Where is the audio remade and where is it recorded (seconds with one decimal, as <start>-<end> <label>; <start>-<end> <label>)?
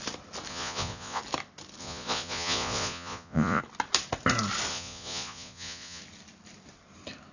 0.0-0.5 recorded; 0.5-1.2 remade; 1.2-1.8 recorded; 1.8-3.6 remade; 3.6-4.7 recorded; 4.7-6.0 remade; 6.0-7.3 recorded